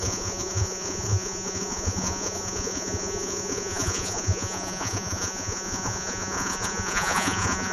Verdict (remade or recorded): remade